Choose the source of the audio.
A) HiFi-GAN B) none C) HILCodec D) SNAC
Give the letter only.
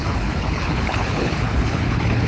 C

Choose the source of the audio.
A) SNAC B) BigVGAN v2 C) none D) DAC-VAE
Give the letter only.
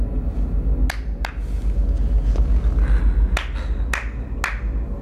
C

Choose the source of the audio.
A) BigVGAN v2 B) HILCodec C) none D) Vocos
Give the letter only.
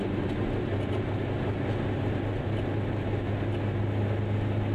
C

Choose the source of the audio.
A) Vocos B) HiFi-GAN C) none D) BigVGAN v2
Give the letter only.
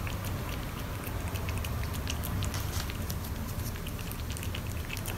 C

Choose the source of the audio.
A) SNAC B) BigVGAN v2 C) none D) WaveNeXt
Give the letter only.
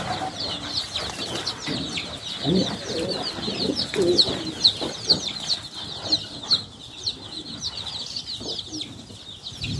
C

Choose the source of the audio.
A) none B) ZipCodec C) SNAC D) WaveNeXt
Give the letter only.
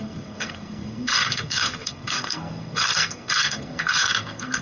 C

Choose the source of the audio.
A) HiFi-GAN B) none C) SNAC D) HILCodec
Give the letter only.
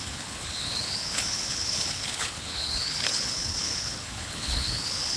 D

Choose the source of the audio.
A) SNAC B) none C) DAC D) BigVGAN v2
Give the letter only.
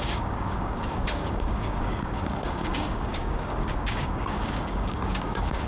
C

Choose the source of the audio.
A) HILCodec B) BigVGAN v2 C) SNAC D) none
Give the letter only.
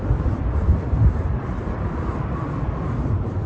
B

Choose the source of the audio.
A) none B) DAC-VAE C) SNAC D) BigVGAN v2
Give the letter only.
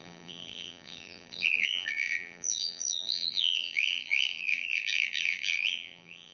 D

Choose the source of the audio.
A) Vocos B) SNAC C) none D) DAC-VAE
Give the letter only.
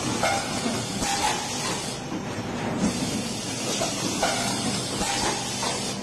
C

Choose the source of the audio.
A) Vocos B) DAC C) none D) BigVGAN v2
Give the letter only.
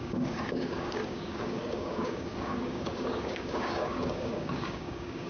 B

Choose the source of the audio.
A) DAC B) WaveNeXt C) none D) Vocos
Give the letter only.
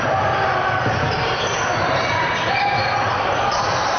C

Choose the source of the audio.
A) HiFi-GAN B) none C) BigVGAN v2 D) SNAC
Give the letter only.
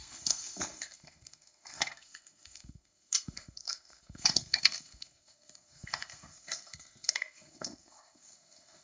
D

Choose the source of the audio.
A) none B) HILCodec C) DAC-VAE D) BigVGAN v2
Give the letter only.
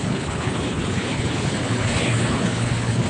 B